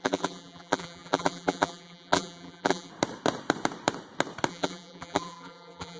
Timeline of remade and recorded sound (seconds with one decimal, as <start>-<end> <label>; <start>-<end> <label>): 0.0-2.9 remade; 2.9-4.5 recorded; 4.5-6.0 remade